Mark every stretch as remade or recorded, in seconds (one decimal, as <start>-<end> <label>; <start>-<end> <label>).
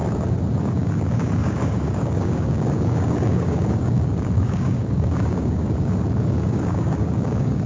0.0-0.6 recorded; 0.6-7.7 remade